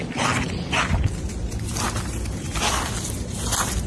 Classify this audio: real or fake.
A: real